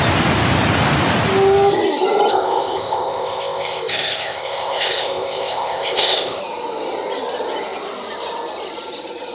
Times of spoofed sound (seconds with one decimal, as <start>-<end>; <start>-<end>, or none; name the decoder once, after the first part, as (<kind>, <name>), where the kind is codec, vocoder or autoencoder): 2.3-6.4 (codec, ZipCodec)